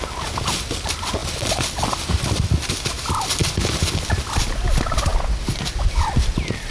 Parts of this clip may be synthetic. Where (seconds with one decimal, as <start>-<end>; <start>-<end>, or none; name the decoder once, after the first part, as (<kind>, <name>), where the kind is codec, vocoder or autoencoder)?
none